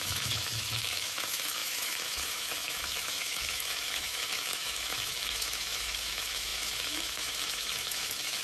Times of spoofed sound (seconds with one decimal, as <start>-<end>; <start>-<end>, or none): 0.0-8.4